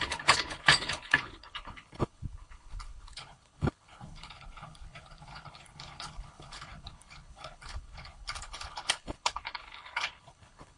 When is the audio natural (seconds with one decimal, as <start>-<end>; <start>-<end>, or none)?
none